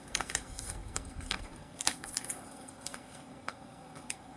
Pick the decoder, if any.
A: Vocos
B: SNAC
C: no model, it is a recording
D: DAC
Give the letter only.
B